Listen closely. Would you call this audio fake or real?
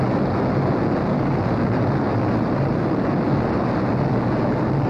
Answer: real